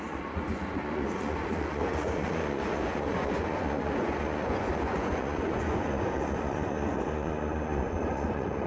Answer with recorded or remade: remade